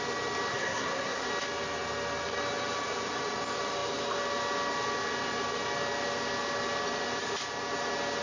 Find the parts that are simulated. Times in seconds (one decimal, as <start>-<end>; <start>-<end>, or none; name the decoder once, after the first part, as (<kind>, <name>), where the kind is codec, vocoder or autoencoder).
0.5-1.3 (codec, SNAC)